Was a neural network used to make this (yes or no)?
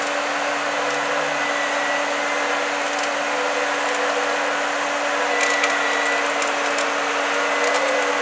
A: no